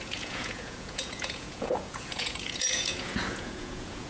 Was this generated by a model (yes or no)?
yes